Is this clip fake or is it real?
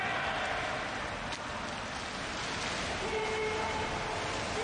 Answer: real